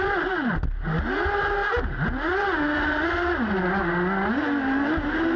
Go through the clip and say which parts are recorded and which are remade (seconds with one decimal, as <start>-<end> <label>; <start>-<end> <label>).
0.0-5.4 recorded